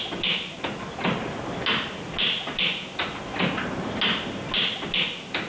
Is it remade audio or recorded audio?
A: recorded